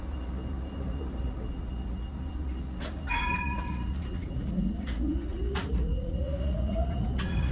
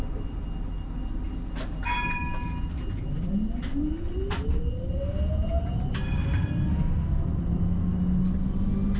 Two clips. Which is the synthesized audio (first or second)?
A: first